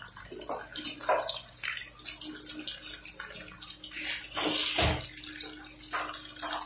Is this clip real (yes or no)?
yes